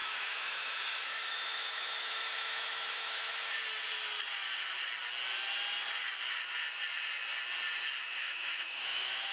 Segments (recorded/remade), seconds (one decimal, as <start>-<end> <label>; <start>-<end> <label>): 0.0-3.6 remade; 3.6-8.2 recorded; 8.2-9.3 remade